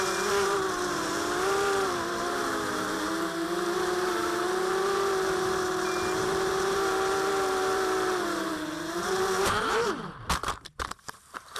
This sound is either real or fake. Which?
fake